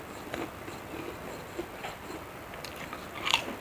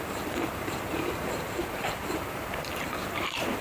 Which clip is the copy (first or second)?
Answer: second